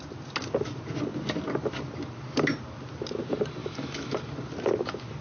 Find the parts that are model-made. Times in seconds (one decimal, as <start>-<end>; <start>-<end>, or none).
3.6-4.2